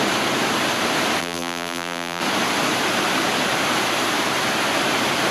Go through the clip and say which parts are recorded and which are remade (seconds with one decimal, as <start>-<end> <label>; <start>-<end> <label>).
0.0-1.2 recorded; 1.2-2.2 remade; 2.2-5.3 recorded